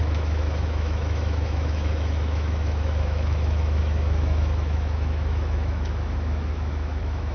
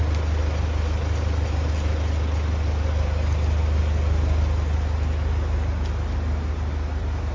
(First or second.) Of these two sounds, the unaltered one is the second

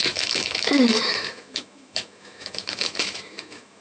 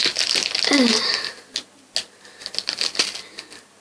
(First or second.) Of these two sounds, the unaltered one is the second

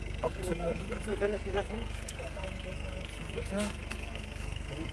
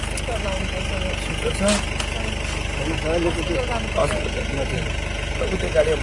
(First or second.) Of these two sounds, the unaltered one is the second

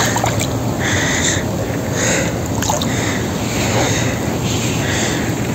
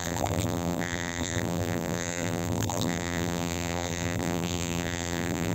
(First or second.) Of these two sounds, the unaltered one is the first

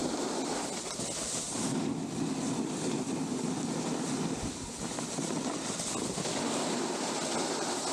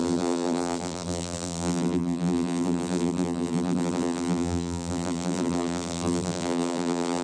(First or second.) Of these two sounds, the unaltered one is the first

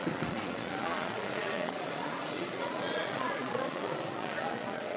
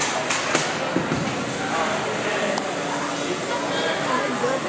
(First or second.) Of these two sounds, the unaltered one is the second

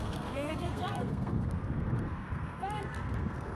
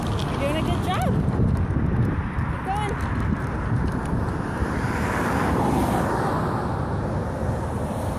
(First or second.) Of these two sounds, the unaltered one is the second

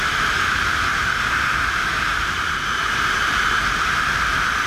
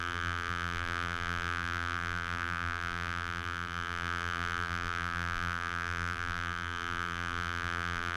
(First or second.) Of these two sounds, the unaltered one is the first